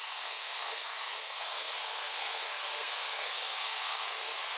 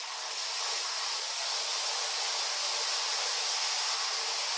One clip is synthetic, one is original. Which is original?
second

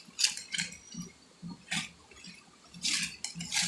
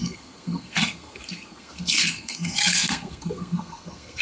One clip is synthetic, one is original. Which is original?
first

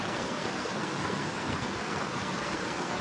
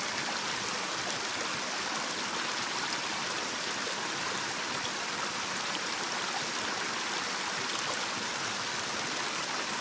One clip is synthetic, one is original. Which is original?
second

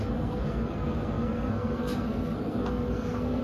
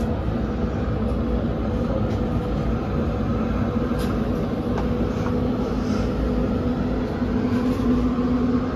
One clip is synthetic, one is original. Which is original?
second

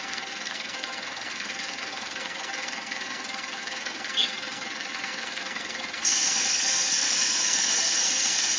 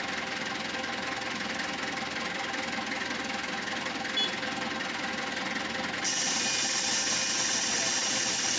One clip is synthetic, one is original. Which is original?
second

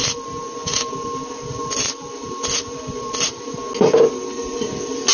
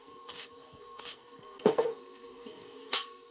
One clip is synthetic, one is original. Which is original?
first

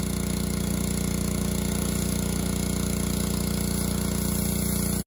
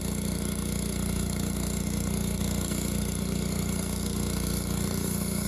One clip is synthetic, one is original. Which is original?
first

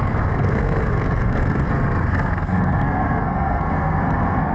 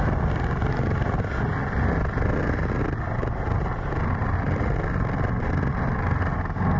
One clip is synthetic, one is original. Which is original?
second